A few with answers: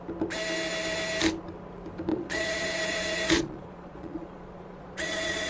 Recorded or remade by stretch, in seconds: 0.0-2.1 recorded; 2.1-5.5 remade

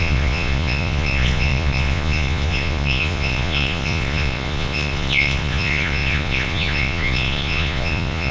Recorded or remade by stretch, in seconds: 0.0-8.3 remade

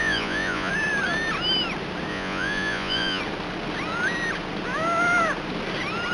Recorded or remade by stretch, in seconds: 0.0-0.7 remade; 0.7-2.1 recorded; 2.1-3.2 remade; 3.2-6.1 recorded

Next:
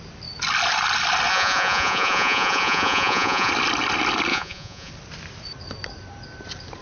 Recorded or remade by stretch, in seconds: 0.0-1.3 recorded; 1.3-3.5 remade; 3.5-4.3 recorded; 4.3-4.9 remade; 4.9-6.8 recorded

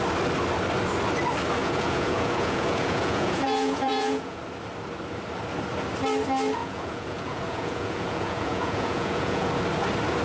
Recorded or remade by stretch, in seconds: 0.0-1.6 recorded; 1.6-4.4 remade; 4.4-6.6 recorded; 6.6-9.5 remade; 9.5-10.2 recorded

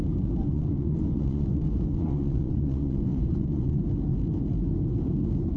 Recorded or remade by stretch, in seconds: 0.0-0.4 recorded; 0.4-3.8 remade; 3.8-5.6 recorded